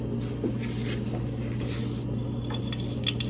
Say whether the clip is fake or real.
real